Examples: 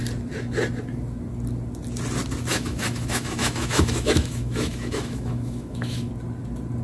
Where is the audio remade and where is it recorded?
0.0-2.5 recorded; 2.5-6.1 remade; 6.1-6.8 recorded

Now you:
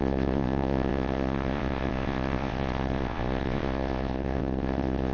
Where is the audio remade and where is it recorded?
0.0-5.1 remade

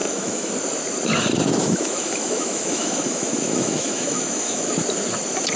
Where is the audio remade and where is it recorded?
0.0-0.5 remade; 0.5-1.6 recorded; 1.6-4.7 remade; 4.7-5.6 recorded

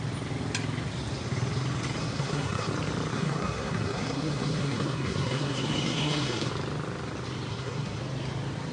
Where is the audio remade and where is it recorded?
0.0-2.0 recorded; 2.0-2.7 remade; 2.7-3.1 recorded; 3.1-6.5 remade; 6.5-7.5 recorded; 7.5-8.0 remade; 8.0-8.7 recorded

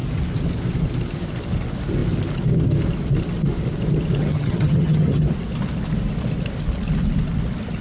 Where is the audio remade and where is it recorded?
0.0-4.2 recorded; 4.2-5.2 remade; 5.2-7.8 recorded